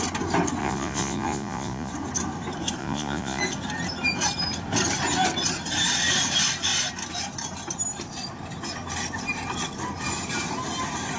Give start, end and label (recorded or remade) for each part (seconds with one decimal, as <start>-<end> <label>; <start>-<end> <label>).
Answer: 0.0-0.6 recorded; 0.6-1.9 remade; 1.9-2.8 recorded; 2.8-3.4 remade; 3.4-11.2 recorded